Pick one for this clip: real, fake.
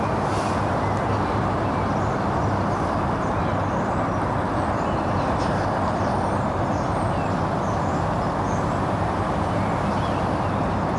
real